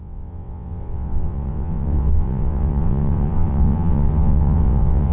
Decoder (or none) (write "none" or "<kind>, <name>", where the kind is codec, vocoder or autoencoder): vocoder, WaveNeXt